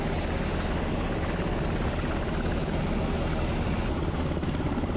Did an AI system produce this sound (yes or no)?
no